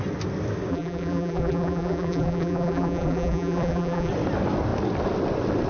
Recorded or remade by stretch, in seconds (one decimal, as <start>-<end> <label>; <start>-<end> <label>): 0.0-0.7 recorded; 0.7-4.1 remade; 4.1-5.7 recorded